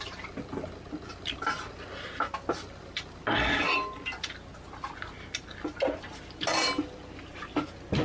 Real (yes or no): yes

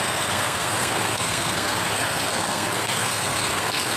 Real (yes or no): no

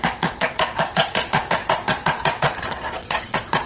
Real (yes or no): no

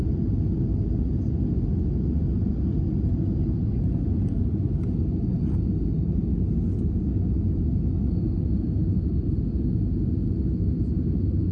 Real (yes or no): yes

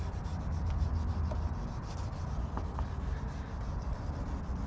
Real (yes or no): yes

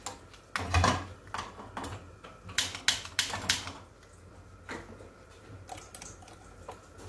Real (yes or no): yes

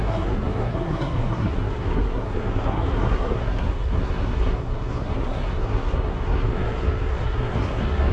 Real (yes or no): no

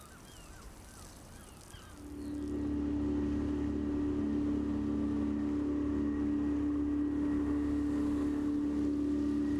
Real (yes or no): yes